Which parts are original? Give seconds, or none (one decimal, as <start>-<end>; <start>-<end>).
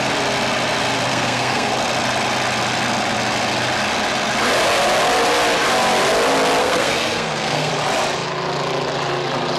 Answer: 0.0-1.1; 1.7-6.6; 7.7-9.6